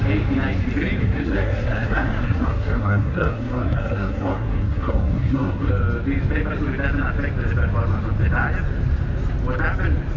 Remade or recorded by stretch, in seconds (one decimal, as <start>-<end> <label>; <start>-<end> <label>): 0.0-1.0 recorded; 1.0-5.7 remade; 5.7-10.2 recorded